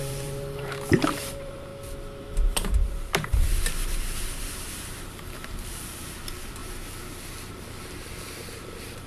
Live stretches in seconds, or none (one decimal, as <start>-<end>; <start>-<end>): 1.7-2.2; 6.6-7.5